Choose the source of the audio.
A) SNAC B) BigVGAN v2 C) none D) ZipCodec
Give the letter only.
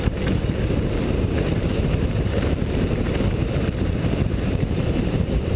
B